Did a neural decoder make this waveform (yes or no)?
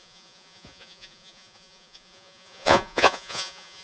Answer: yes